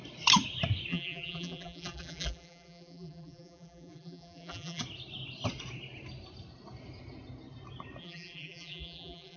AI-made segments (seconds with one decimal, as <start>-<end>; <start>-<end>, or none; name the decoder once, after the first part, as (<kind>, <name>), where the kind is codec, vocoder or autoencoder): 0.9-4.8 (vocoder, BigVGAN v2); 8.0-9.4